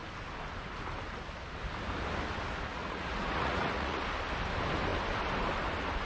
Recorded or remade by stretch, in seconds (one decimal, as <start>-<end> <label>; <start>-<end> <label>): 0.0-2.7 recorded; 2.7-4.0 remade; 4.0-6.0 recorded